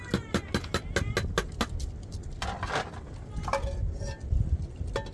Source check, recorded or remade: recorded